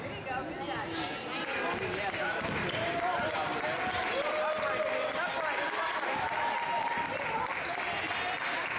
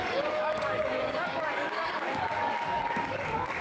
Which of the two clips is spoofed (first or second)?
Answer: second